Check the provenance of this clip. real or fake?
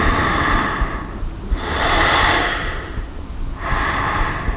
real